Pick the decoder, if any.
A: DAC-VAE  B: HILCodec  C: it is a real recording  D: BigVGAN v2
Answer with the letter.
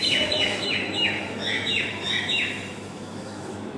A